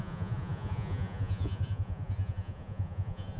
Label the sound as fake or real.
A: fake